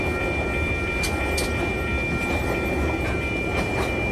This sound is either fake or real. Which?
real